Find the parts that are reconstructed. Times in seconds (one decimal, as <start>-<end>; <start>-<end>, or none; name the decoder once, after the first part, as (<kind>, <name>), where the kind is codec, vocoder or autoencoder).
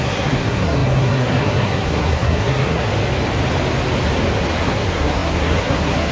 0.0-2.9 (codec, SNAC); 4.6-6.1